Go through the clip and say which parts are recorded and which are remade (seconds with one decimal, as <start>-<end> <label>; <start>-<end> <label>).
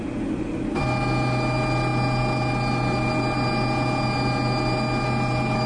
0.0-5.7 recorded